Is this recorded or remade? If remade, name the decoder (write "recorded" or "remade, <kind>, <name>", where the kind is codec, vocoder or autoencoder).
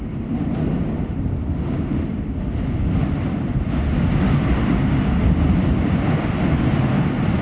recorded